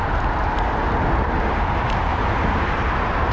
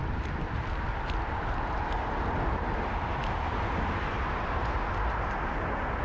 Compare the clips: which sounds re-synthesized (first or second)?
second